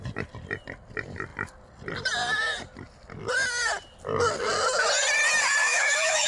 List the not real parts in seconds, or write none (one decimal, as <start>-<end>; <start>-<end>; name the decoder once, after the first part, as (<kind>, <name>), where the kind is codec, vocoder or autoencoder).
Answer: 5.6-6.3 (autoencoder, DAC-VAE)